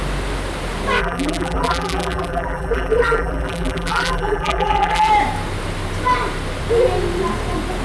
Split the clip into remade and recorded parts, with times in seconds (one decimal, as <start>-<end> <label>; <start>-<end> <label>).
0.0-1.0 recorded; 1.0-5.1 remade; 5.1-7.8 recorded